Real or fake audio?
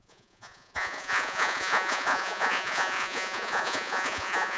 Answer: fake